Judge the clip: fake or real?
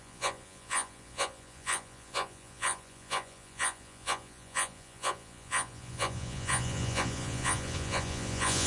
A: fake